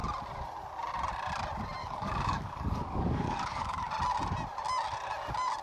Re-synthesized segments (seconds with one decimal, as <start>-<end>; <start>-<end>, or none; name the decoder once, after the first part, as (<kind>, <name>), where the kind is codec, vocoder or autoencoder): 1.8-3.9 (codec, DAC)